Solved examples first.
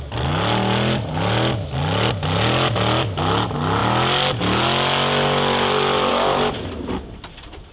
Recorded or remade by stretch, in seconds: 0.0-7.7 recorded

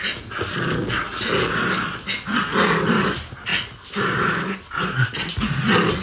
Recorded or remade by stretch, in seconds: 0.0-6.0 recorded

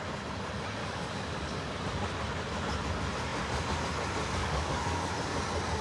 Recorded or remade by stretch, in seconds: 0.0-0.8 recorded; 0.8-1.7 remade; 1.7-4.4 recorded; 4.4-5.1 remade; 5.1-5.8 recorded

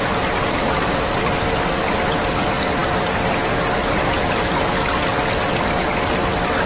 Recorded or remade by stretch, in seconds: 0.0-6.7 recorded

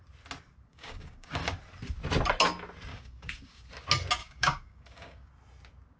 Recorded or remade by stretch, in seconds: 0.0-0.7 recorded; 0.7-1.5 remade; 1.5-2.9 recorded; 2.9-3.7 remade; 3.7-4.2 recorded; 4.2-5.3 remade; 5.3-6.0 recorded